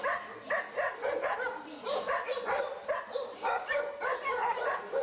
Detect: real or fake real